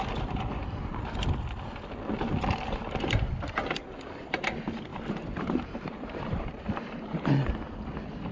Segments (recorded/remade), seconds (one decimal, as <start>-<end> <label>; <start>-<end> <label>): 0.0-3.6 recorded; 3.6-4.4 remade; 4.4-4.9 recorded; 4.9-7.3 remade; 7.3-8.3 recorded